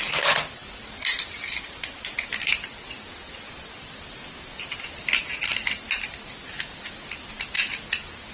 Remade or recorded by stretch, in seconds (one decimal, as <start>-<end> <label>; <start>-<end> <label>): 0.0-8.3 recorded

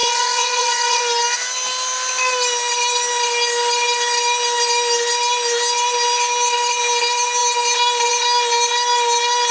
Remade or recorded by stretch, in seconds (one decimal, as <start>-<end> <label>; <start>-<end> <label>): 0.0-1.0 remade; 1.0-9.5 recorded

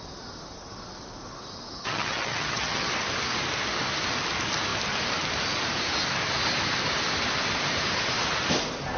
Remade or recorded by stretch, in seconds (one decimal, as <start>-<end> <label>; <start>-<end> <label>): 0.0-1.8 recorded; 1.8-2.9 remade; 2.9-9.0 recorded

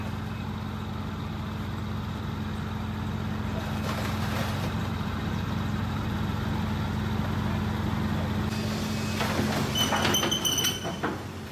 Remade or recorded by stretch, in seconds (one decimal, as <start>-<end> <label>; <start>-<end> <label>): 0.0-4.2 recorded; 4.2-6.5 remade; 6.5-11.5 recorded

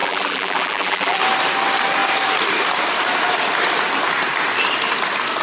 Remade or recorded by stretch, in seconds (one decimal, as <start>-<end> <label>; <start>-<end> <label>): 0.0-1.2 remade; 1.2-5.4 recorded

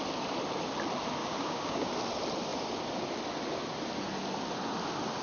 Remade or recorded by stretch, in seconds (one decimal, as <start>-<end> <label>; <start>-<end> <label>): 0.0-1.2 recorded; 1.2-1.9 remade; 1.9-5.2 recorded

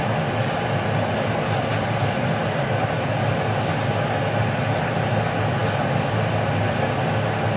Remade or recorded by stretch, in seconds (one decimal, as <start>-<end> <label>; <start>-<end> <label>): 0.0-7.6 recorded

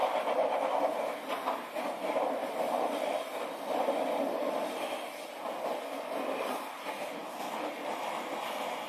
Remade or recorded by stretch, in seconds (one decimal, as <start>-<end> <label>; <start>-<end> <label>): 0.0-7.2 recorded; 7.2-8.4 remade; 8.4-8.9 recorded